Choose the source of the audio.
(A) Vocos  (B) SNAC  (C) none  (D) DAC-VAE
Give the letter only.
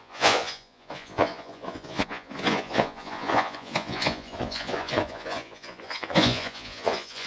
A